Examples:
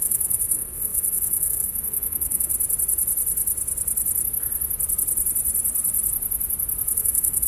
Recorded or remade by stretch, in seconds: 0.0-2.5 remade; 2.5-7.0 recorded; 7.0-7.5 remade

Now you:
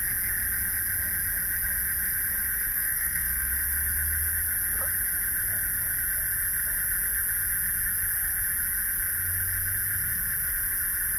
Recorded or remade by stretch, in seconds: 0.0-2.7 recorded; 2.7-3.5 remade; 3.5-11.2 recorded